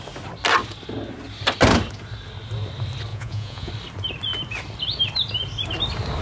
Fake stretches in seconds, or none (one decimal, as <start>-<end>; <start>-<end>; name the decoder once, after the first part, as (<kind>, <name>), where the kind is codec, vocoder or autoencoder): 3.1-3.7 (vocoder, Vocos)